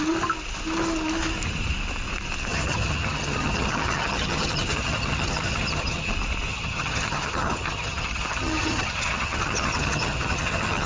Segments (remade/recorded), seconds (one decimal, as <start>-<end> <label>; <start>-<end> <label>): 0.0-2.5 recorded; 2.5-6.1 remade; 6.1-6.5 recorded; 6.5-10.9 remade